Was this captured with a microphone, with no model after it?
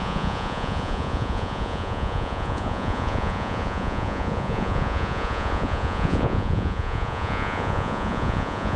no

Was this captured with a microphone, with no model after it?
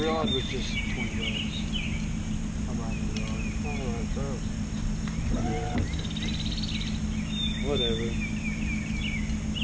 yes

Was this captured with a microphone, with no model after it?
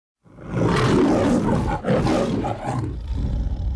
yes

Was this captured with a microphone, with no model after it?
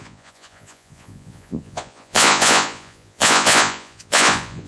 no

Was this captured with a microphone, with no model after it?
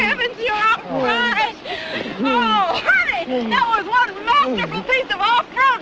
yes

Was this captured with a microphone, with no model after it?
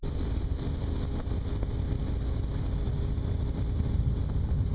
yes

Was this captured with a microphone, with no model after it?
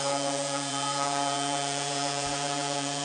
no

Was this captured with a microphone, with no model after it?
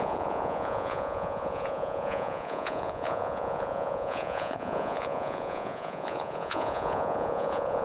no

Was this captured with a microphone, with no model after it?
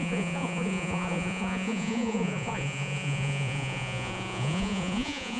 no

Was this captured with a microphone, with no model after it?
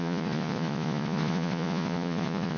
no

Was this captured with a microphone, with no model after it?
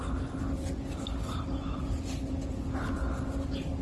yes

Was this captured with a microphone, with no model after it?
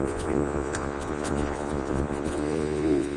no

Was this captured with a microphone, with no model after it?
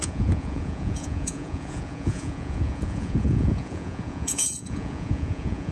no